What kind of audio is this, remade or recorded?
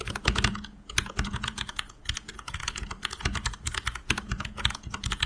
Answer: remade